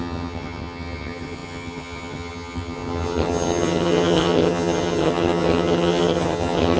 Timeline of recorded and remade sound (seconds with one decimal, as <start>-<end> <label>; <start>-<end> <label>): 0.0-6.8 remade